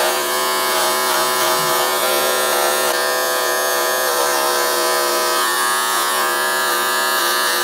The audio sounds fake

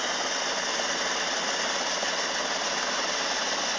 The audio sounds real